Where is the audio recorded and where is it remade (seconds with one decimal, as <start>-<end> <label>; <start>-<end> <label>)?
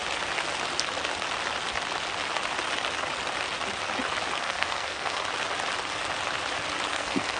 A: 0.0-4.4 recorded; 4.4-5.2 remade; 5.2-6.9 recorded; 6.9-7.4 remade